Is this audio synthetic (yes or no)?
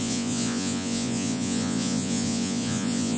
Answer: yes